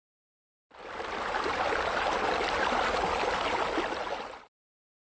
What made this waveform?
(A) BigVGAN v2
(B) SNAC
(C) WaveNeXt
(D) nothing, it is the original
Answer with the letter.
D